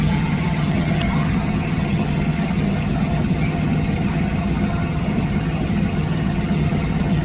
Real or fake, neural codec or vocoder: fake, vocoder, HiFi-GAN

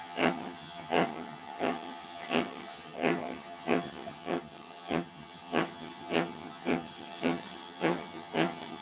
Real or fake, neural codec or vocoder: fake, vocoder, HiFi-GAN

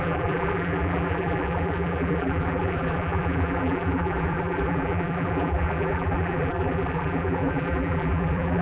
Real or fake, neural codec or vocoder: fake, vocoder, BigVGAN v2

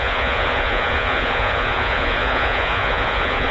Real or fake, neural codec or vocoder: fake, vocoder, Vocos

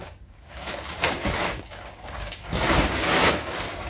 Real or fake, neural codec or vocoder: fake, codec, DAC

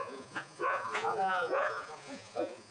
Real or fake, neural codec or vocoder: fake, vocoder, Vocos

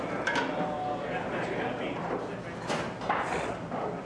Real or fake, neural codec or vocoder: real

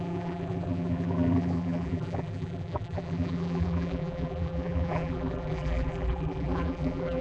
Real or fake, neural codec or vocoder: fake, vocoder, BigVGAN v2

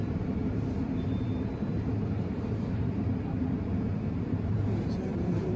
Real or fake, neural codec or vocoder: fake, vocoder, BigVGAN v2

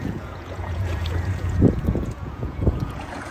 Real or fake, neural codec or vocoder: fake, vocoder, Vocos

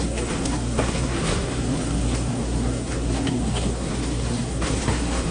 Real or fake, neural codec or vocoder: fake, codec, SNAC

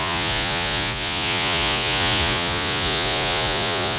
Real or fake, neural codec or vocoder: fake, vocoder, Vocos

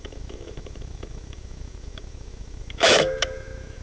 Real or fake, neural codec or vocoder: fake, autoencoder, DAC-VAE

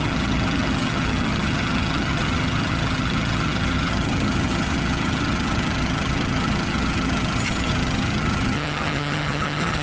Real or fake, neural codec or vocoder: fake, vocoder, HiFi-GAN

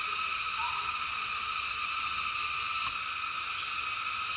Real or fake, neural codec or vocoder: real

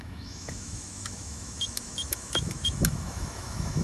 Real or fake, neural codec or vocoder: fake, autoencoder, DAC-VAE